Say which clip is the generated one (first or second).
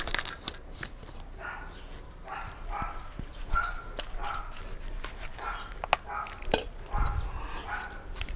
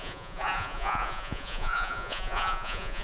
second